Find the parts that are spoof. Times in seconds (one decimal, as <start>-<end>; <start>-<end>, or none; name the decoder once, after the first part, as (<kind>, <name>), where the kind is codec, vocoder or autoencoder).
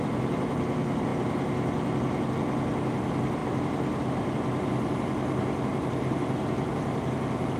3.4-4.1 (vocoder, BigVGAN v2); 5.7-6.7